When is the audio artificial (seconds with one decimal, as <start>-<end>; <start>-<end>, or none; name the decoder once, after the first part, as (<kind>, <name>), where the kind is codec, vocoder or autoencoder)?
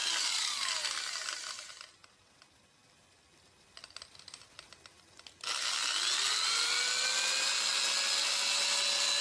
none